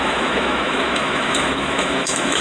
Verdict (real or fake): fake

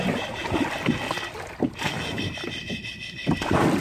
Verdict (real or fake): real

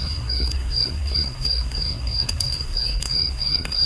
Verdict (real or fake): fake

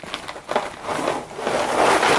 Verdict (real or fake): real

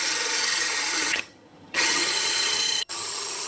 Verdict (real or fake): fake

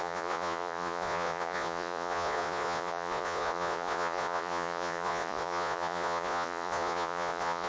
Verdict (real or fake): fake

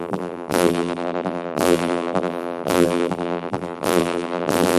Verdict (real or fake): fake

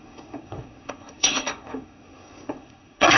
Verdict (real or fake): fake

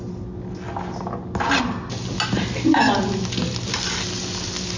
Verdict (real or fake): real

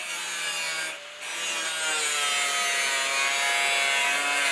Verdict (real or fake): real